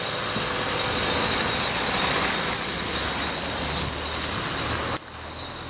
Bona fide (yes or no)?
yes